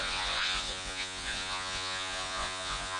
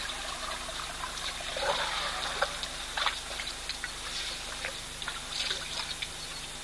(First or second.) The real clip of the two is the second